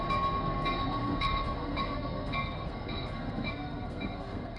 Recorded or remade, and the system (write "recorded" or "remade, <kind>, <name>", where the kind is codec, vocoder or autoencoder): remade, codec, SNAC